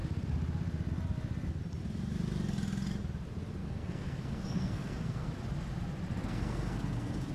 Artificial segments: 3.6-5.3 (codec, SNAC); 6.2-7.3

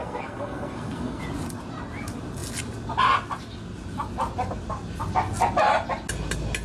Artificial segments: 0.0-1.2 (codec, SNAC)

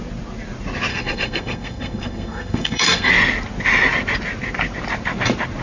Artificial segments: 0.9-3.1 (codec, SNAC)